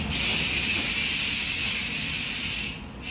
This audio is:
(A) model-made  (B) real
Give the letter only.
B